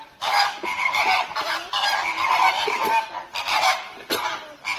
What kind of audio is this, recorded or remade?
remade